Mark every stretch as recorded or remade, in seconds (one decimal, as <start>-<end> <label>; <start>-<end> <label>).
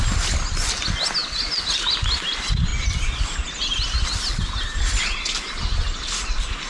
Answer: 0.0-6.7 recorded